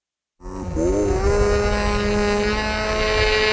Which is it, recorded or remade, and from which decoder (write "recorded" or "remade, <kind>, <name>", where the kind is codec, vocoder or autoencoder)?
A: recorded